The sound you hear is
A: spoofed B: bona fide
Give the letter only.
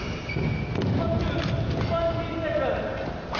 B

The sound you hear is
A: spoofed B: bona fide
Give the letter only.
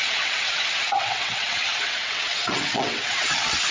A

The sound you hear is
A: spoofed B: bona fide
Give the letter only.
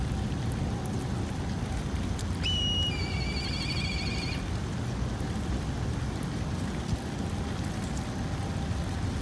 B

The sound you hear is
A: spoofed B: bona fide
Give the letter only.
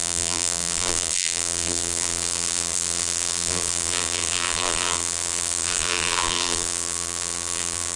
A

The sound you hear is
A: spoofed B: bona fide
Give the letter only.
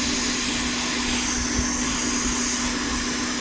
B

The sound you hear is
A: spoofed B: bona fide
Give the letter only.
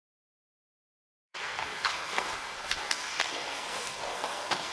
A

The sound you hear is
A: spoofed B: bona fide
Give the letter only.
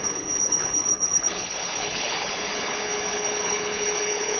A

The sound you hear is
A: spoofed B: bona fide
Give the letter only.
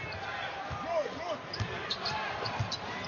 B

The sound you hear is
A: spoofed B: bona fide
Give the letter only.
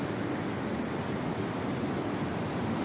B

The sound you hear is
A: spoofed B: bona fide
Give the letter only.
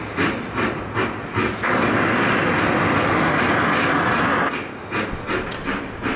B